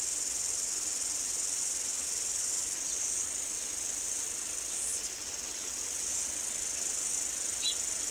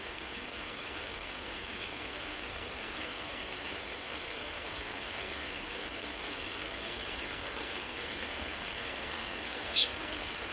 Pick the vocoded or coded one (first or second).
second